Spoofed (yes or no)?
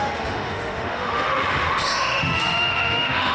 yes